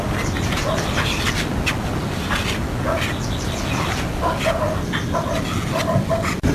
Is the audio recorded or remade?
recorded